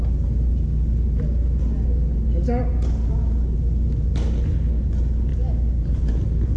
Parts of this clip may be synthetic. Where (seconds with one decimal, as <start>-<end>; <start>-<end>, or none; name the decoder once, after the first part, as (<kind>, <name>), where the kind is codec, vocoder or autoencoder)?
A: none